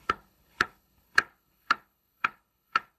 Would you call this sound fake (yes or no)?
yes